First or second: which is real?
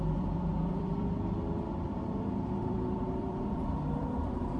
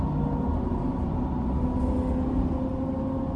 second